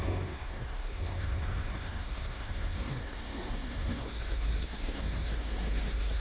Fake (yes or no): yes